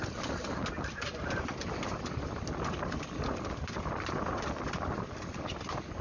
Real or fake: real